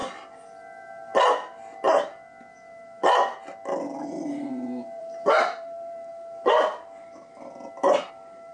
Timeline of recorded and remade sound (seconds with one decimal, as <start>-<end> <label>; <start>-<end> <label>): 0.0-5.0 recorded; 5.0-6.1 remade; 6.1-7.9 recorded; 7.9-8.5 remade